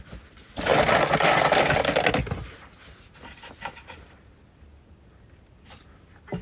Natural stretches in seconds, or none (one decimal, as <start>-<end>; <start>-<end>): 0.0-6.4